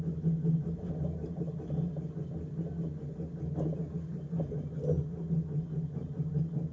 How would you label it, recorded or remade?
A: recorded